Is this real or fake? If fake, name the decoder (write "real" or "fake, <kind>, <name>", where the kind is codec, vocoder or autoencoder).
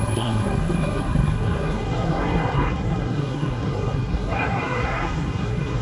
fake, codec, SNAC